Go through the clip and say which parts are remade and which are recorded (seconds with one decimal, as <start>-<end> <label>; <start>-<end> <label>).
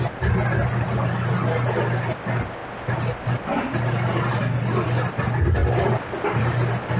0.0-7.0 recorded